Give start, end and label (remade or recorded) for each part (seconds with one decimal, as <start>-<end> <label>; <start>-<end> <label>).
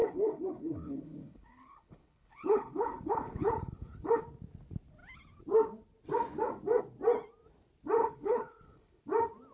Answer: 0.0-4.2 remade; 4.2-8.0 recorded; 8.0-9.0 remade; 9.0-9.5 recorded